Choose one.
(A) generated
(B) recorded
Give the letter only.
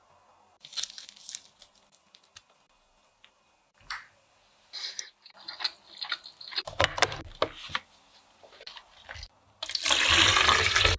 B